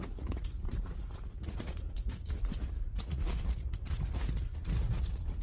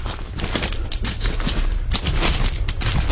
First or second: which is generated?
first